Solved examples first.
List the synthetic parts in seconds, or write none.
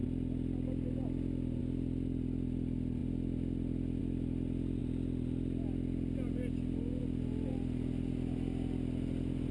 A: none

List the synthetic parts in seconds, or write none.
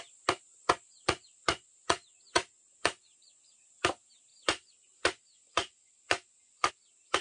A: 0.5-3.8 (vocoder, Vocos); 4.3-6.7